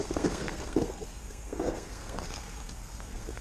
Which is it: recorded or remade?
remade